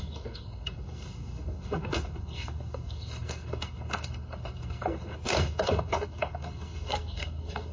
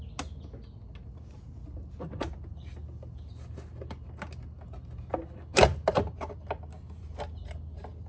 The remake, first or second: first